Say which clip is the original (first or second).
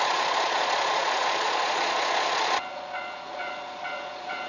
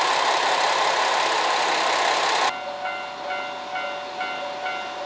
second